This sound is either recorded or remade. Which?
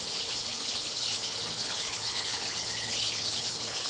remade